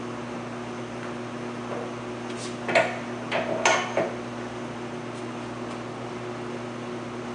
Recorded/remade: recorded